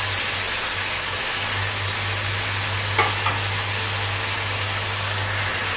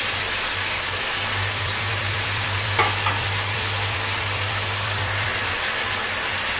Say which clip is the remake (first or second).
second